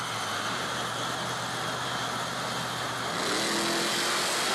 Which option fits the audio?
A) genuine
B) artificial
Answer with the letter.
A